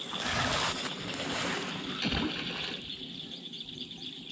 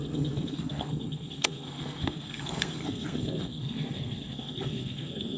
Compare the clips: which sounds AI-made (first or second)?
second